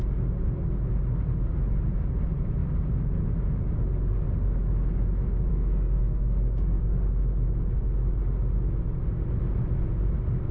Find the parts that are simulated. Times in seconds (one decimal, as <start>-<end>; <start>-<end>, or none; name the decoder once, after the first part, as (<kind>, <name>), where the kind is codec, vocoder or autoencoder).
5.5-6.8 (codec, SNAC)